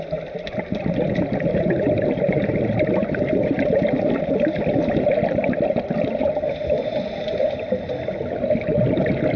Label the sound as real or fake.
real